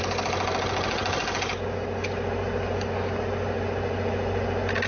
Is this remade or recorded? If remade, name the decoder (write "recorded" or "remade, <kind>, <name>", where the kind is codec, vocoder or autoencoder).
recorded